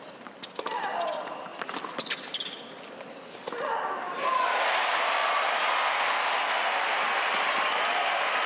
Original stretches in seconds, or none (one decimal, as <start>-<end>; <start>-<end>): 0.0-8.5